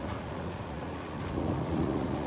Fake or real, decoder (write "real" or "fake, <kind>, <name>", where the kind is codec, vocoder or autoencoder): fake, vocoder, Vocos